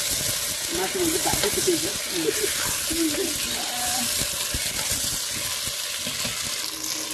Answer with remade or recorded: recorded